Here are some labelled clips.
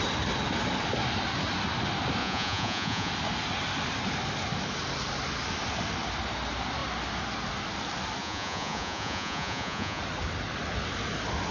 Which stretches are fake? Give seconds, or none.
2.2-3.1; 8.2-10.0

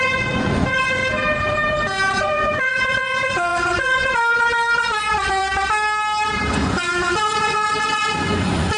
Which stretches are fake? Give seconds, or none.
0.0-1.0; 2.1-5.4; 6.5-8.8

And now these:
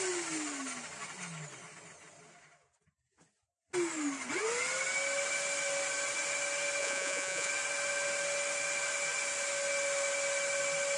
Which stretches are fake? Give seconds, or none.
6.8-7.5

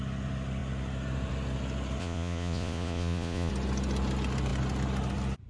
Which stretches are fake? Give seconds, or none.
2.0-3.5

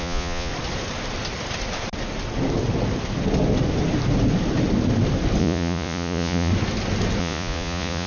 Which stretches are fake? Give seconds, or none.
0.0-0.5; 5.4-6.5; 7.2-8.1